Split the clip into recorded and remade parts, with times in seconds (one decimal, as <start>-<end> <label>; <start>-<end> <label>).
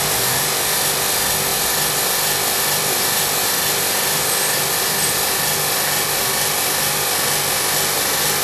0.0-1.5 recorded; 1.5-4.2 remade; 4.2-8.4 recorded